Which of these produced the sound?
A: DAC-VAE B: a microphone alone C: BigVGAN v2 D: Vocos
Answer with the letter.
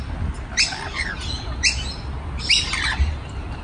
B